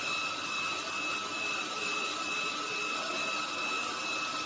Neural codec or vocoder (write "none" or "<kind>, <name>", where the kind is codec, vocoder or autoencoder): none